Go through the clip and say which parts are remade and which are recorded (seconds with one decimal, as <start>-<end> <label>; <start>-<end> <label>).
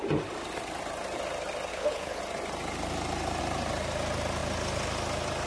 0.0-1.7 recorded; 1.7-2.2 remade; 2.2-5.5 recorded